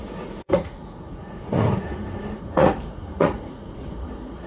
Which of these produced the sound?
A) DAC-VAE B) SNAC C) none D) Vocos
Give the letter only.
D